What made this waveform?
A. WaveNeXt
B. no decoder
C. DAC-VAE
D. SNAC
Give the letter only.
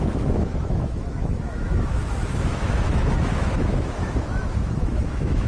C